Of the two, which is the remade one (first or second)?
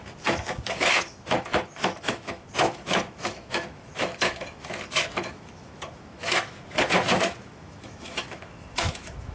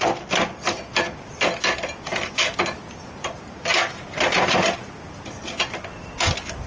first